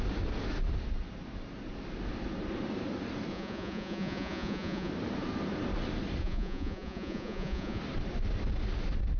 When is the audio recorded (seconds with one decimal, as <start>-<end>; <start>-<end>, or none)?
0.0-3.3; 4.9-6.2; 7.8-9.2

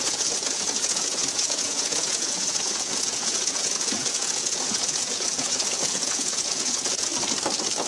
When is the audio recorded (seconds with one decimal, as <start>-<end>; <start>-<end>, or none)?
7.1-7.9

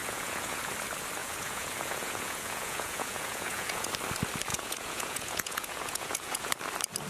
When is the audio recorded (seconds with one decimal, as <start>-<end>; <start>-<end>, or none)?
0.7-1.2; 3.9-4.5; 6.5-7.1

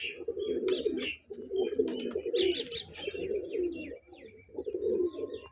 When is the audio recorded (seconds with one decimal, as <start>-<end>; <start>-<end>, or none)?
0.0-5.5

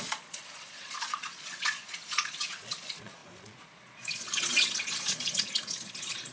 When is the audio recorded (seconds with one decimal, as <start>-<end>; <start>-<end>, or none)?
none